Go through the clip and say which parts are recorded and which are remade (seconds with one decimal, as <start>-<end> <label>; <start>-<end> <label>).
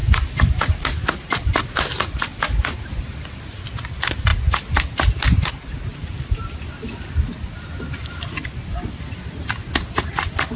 0.0-10.6 recorded